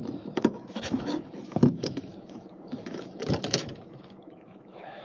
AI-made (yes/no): yes